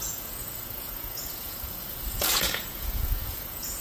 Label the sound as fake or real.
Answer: fake